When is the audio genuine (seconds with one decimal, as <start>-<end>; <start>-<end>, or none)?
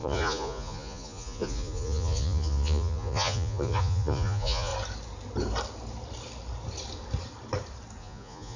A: 4.7-8.0